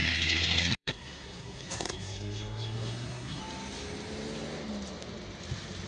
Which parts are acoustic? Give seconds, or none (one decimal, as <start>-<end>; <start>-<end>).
3.4-5.9